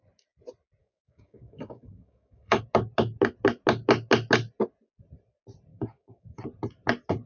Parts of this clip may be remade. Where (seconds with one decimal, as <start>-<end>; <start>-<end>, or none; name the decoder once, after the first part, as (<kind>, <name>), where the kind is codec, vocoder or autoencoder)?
0.8-2.6 (codec, DAC); 5.7-6.4